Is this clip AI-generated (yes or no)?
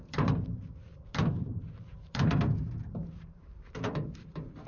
yes